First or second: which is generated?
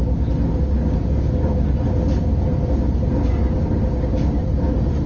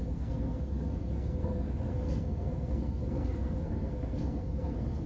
second